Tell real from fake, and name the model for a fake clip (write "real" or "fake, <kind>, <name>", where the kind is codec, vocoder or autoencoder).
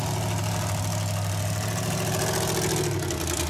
real